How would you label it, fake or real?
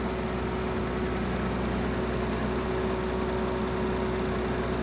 real